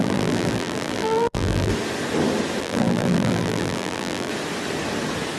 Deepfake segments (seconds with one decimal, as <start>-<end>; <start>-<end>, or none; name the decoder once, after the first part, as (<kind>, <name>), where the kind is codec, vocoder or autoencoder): 0.0-1.7 (vocoder, BigVGAN v2); 2.6-4.3